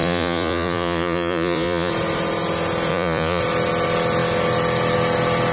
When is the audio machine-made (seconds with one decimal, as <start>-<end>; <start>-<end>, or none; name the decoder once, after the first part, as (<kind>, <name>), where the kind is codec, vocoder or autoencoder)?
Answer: 0.0-1.9 (vocoder, Vocos); 2.9-3.4